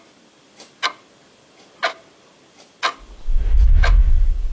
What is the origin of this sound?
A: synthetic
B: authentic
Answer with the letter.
B